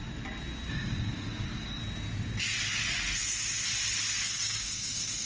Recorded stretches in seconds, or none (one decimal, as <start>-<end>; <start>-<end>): 0.0-0.7; 1.8-4.2